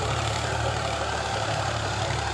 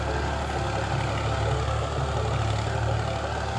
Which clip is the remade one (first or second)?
first